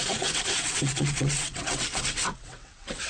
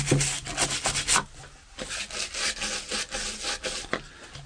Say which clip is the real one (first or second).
second